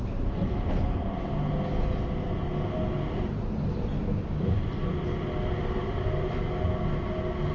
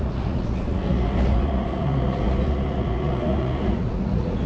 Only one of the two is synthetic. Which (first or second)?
second